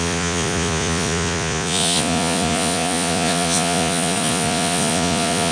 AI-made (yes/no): yes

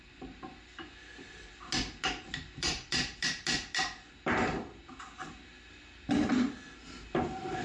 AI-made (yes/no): no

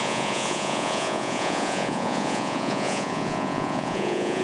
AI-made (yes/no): yes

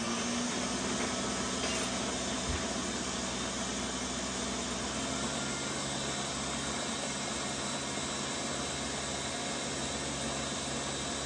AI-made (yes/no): no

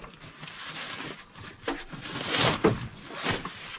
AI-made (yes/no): no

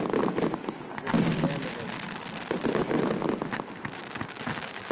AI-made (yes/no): no